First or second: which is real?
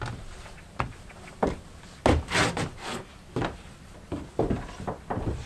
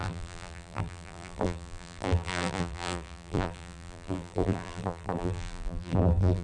first